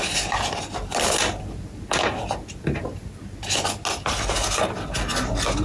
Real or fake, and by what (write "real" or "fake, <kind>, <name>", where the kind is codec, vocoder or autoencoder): real